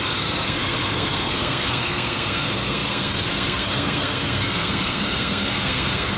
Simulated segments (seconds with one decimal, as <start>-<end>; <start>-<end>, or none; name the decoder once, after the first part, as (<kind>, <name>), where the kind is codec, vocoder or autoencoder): 0.0-6.2 (codec, SNAC)